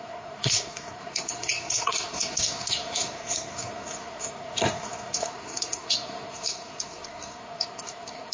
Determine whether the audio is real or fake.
fake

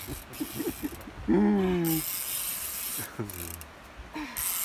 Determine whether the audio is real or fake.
real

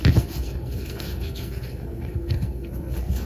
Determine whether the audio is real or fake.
fake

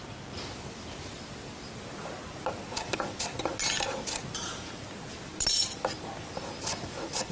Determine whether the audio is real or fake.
real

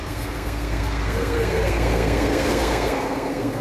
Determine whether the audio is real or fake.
fake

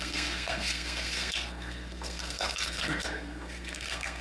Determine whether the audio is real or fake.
fake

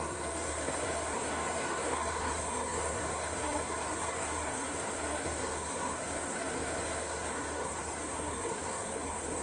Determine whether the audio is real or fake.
fake